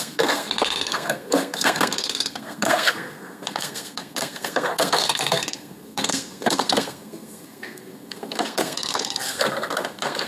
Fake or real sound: fake